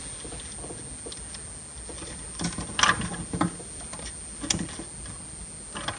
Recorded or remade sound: recorded